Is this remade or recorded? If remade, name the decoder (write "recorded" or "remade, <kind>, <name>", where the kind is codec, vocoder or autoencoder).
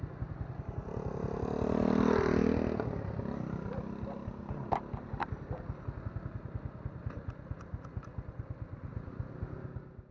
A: recorded